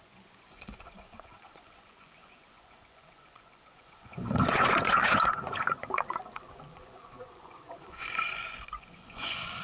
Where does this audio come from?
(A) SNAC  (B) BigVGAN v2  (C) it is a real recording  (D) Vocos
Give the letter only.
D